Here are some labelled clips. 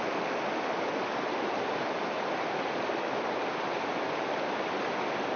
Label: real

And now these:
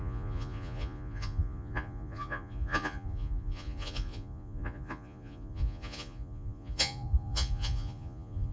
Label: fake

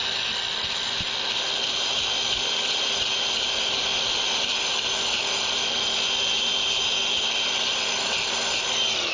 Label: real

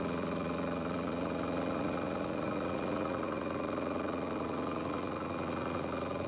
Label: fake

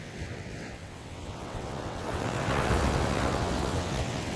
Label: fake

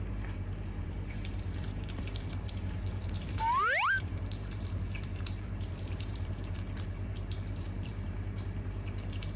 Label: fake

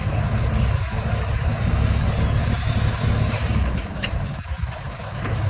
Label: fake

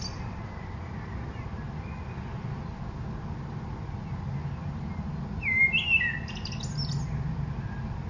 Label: real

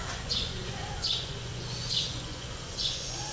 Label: fake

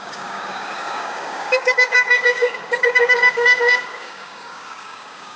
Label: fake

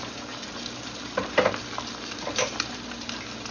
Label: real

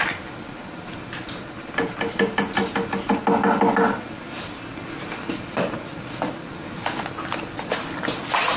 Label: real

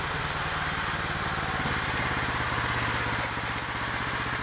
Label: real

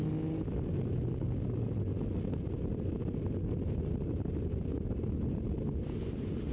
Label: real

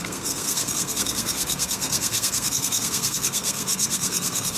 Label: fake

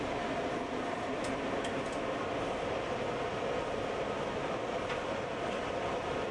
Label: fake